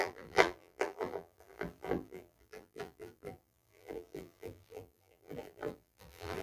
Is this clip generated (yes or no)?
yes